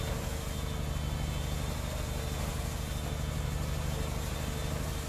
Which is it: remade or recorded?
recorded